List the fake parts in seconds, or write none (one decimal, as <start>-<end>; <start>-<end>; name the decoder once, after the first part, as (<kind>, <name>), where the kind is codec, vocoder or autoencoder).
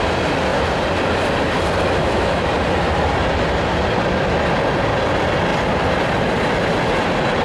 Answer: 2.0-2.5 (autoencoder, DAC-VAE)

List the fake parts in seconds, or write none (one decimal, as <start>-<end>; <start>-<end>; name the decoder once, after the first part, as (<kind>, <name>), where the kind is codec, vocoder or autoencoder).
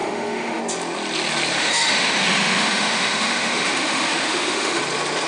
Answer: 0.0-0.6 (autoencoder, DAC-VAE); 1.6-4.8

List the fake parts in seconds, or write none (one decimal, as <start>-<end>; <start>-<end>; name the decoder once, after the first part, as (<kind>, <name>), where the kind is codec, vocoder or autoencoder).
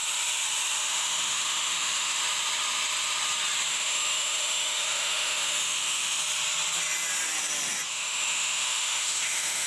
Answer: 0.9-2.2 (autoencoder, DAC-VAE); 3.7-6.2; 7.9-9.7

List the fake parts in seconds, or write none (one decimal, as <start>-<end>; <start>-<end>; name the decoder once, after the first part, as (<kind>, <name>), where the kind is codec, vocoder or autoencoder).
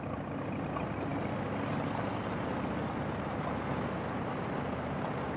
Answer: none